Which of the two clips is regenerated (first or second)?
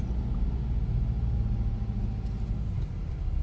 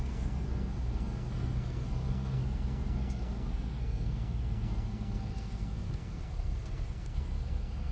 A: second